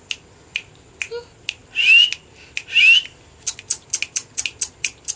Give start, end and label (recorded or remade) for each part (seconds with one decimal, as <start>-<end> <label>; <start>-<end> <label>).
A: 0.0-5.2 recorded